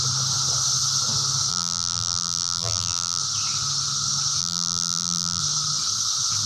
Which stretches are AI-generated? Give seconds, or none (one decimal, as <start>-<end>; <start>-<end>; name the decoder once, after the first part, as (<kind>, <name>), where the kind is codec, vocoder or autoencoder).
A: 1.5-3.2 (vocoder, BigVGAN v2); 4.4-5.4